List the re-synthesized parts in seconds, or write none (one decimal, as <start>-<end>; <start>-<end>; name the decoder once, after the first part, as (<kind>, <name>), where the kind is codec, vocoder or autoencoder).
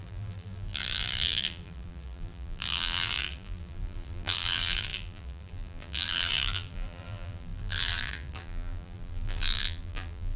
0.0-10.4 (vocoder, BigVGAN v2)